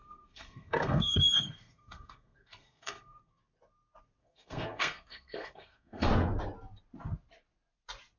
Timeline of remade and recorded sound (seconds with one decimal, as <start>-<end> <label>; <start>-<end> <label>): 0.0-3.4 remade; 3.4-4.2 recorded; 4.2-6.1 remade; 6.1-8.2 recorded